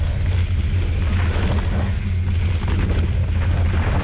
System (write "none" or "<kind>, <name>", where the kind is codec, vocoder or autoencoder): none